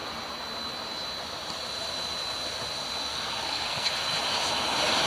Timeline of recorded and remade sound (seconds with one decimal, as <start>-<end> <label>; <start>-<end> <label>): 0.0-3.1 recorded; 3.1-3.9 remade; 3.9-5.1 recorded